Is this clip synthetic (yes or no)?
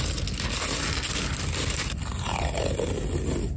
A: no